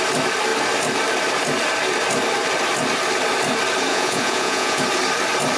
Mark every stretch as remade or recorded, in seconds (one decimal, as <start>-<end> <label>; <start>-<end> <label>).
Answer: 0.0-3.9 recorded; 3.9-4.8 remade; 4.8-5.6 recorded